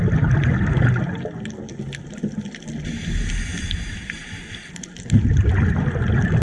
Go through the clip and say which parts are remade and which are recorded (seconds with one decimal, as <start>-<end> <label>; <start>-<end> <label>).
0.0-6.4 recorded